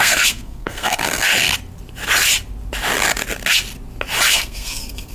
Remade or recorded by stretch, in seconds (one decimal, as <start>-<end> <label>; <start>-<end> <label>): 0.0-1.3 remade; 1.3-4.3 recorded; 4.3-5.1 remade